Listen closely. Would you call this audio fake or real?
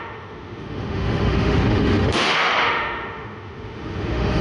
fake